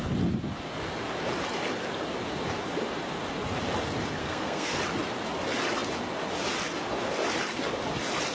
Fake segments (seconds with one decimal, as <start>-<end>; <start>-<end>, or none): 4.2-4.8